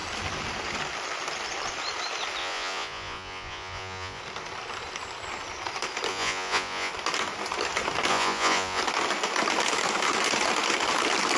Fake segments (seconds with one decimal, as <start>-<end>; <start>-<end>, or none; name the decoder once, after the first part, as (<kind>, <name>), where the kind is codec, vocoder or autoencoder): 2.4-4.2 (vocoder, Vocos); 6.1-6.9; 8.1-8.8